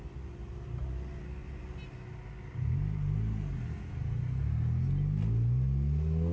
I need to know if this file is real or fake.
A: real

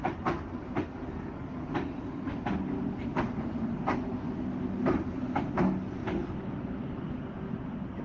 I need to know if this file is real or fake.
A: real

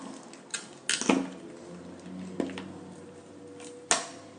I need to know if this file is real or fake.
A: real